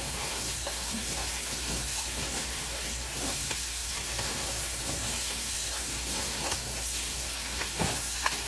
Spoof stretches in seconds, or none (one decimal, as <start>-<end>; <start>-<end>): 0.0-8.5